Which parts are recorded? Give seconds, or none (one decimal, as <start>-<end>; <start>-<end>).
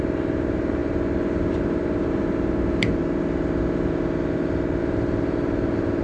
3.0-4.8